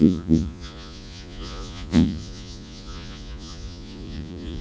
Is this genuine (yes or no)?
no